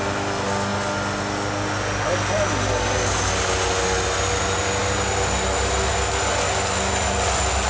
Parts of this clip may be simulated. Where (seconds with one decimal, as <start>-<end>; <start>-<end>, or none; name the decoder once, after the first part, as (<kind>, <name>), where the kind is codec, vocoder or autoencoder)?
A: none